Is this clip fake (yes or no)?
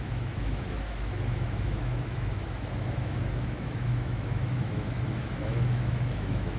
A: yes